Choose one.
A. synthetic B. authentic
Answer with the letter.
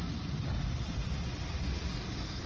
B